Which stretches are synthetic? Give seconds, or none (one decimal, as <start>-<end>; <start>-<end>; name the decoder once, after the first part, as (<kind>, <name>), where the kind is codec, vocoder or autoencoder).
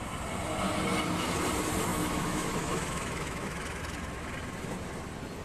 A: 1.9-3.8 (autoencoder, DAC-VAE)